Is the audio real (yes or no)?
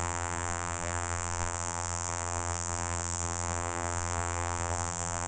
no